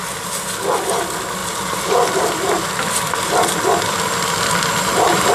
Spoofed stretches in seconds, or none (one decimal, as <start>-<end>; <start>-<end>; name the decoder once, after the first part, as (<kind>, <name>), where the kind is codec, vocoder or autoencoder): 1.4-4.4 (vocoder, BigVGAN v2)